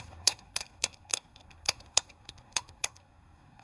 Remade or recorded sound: remade